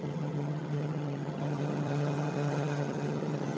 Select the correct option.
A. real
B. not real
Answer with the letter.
B